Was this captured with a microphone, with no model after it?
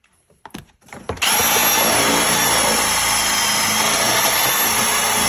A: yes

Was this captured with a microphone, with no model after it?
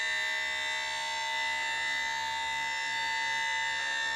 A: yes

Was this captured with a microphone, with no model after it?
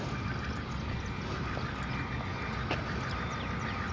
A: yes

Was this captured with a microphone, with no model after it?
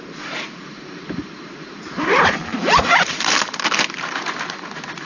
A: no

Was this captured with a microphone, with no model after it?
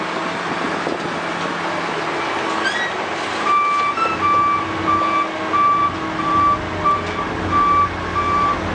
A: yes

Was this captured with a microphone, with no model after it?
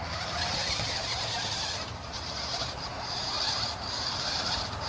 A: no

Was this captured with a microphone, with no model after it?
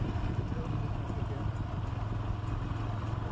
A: no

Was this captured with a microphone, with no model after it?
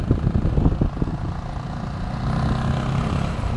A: yes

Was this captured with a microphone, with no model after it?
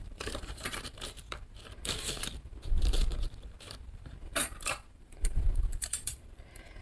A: no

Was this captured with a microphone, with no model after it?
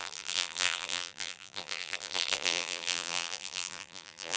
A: no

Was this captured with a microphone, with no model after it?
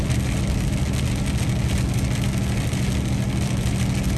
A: yes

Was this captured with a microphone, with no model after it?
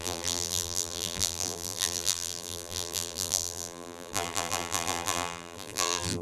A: no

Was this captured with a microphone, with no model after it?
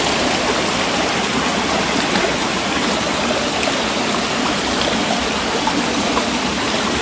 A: yes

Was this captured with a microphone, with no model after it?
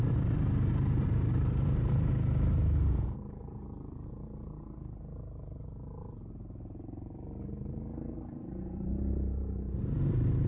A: no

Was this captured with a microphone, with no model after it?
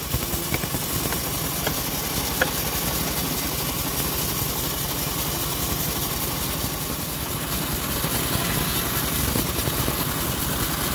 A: yes